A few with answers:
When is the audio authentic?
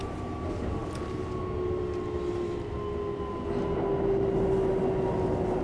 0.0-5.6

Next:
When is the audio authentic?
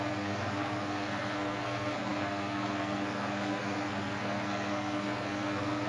none